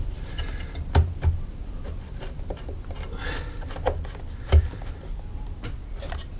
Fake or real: real